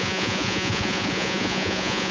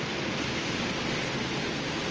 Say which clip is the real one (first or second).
second